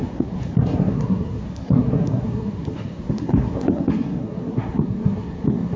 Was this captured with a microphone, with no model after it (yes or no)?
no